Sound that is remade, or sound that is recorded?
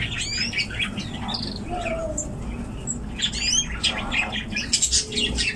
recorded